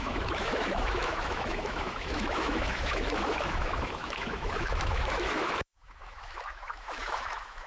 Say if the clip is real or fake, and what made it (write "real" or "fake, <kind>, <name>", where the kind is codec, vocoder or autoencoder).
fake, autoencoder, DAC-VAE